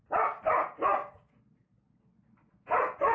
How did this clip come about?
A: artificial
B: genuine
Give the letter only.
B